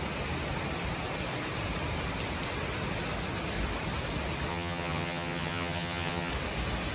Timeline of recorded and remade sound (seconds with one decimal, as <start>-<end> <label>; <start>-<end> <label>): 0.0-4.5 recorded; 4.5-6.3 remade; 6.3-6.9 recorded

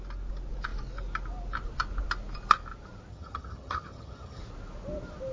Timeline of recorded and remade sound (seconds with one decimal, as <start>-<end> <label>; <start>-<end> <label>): 0.0-3.1 recorded; 3.1-4.4 remade; 4.4-5.3 recorded

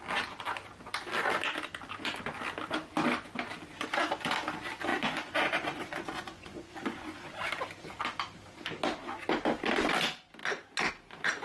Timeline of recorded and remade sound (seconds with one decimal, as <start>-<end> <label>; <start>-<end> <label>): 0.0-4.9 recorded; 4.9-7.3 remade; 7.3-11.4 recorded

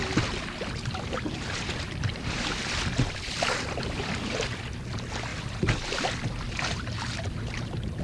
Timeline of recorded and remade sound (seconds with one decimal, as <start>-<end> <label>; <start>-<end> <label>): 0.0-4.8 remade; 4.8-5.3 recorded; 5.3-6.0 remade; 6.0-8.0 recorded

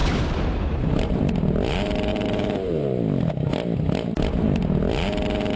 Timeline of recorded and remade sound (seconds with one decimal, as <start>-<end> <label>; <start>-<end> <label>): 0.0-1.2 remade; 1.2-2.1 recorded; 2.1-3.3 remade; 3.3-5.6 recorded

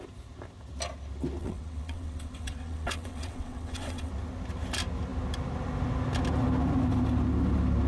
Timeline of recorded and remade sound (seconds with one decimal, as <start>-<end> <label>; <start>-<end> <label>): 0.0-1.4 recorded; 1.4-4.1 remade; 4.1-7.9 recorded